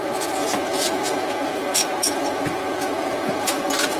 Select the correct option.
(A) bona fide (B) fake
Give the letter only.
B